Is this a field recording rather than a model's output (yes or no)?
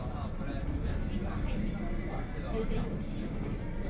yes